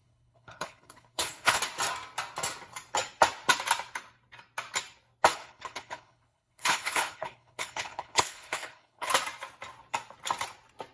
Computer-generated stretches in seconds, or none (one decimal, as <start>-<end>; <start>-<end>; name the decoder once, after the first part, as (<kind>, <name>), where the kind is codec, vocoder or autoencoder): 0.0-1.6 (codec, HILCodec); 5.3-9.1